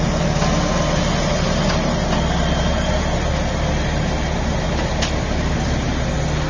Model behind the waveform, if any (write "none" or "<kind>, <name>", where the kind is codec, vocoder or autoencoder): none